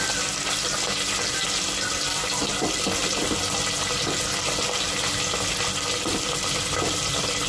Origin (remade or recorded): recorded